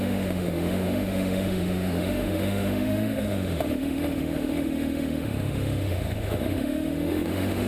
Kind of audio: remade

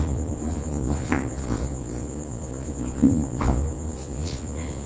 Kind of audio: remade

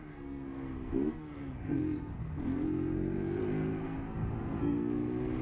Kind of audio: remade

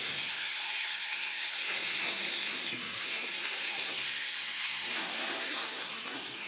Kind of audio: remade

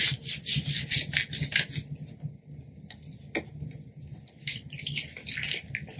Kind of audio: recorded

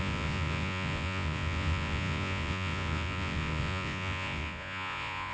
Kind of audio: remade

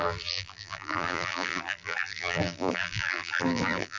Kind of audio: remade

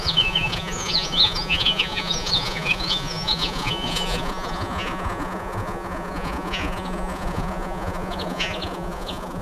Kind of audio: remade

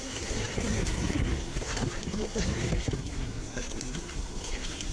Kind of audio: remade